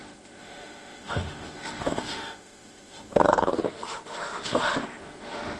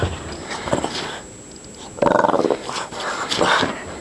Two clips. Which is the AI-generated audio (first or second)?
first